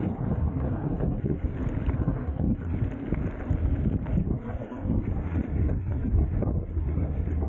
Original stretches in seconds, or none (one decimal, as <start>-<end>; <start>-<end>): 1.5-2.0; 2.8-4.2